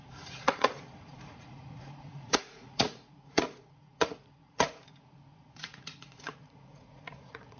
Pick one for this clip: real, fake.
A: fake